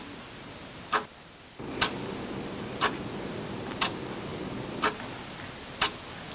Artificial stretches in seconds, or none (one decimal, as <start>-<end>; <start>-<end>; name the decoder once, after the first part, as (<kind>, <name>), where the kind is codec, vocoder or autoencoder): 4.3-4.9 (vocoder, BigVGAN v2)